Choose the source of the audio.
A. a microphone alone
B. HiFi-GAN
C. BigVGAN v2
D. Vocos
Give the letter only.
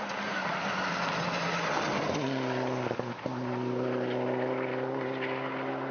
A